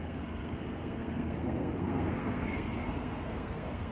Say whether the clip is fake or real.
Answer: fake